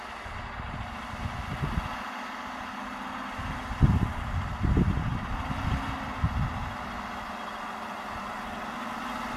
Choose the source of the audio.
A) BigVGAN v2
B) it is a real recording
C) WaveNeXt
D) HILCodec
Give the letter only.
B